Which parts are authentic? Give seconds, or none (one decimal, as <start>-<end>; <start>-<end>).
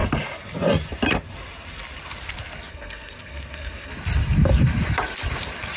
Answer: 0.0-2.7; 3.9-5.8